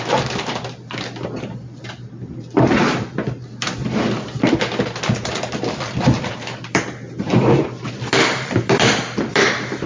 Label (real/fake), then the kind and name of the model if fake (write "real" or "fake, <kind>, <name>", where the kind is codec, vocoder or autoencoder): fake, vocoder, BigVGAN v2